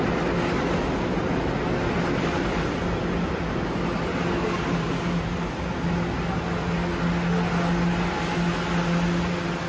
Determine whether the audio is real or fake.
real